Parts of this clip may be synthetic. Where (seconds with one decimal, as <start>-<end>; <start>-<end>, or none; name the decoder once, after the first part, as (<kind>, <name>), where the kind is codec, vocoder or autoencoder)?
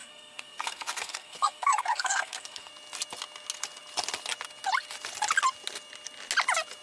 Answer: 0.0-2.7 (codec, SNAC)